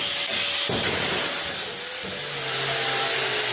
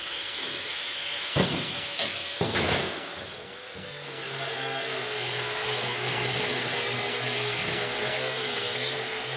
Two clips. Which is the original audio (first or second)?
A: first